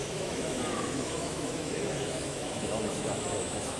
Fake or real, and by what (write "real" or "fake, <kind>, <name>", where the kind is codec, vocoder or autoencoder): fake, autoencoder, DAC-VAE